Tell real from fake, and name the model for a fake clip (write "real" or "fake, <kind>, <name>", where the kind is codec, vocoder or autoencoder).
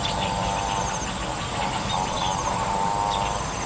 real